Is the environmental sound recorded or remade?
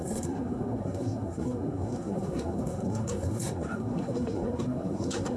remade